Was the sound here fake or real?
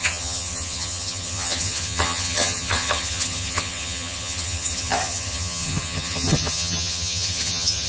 fake